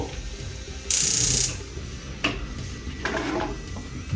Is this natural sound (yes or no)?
no